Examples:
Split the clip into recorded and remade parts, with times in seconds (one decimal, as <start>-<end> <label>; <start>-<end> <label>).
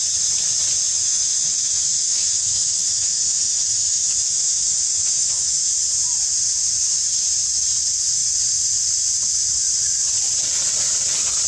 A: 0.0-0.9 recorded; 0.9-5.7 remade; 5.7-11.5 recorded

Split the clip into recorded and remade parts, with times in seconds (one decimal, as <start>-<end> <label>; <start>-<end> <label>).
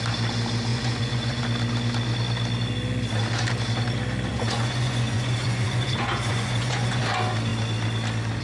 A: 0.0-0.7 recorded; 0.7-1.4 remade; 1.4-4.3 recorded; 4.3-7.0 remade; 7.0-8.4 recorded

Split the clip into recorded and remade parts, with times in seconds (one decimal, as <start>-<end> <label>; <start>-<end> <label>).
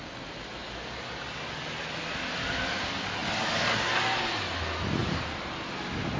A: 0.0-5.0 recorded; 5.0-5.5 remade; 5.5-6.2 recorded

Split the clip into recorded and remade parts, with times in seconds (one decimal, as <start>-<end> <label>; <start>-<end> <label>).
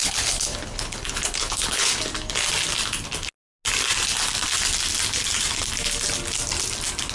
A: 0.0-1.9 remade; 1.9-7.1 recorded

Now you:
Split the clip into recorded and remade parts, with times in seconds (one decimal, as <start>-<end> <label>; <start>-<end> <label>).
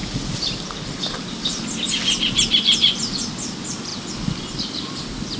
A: 0.0-5.4 remade